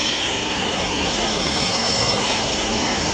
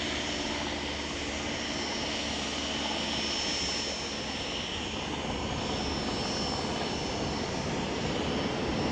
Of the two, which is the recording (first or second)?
second